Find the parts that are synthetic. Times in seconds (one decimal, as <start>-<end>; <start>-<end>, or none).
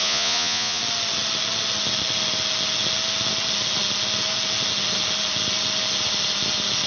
0.0-0.8